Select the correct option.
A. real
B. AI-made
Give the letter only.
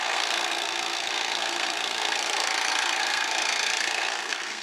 B